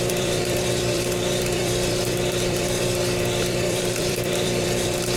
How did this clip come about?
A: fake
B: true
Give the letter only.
A